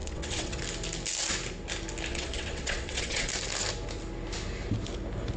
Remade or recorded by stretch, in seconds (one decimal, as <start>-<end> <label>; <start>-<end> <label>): 0.0-0.6 remade; 0.6-2.1 recorded; 2.1-3.3 remade; 3.3-5.4 recorded